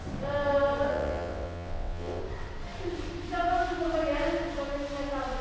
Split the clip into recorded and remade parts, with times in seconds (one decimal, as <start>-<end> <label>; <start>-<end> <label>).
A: 0.0-0.9 recorded; 0.9-2.2 remade; 2.2-5.4 recorded